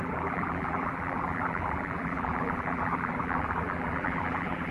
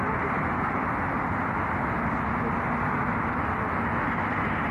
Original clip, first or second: second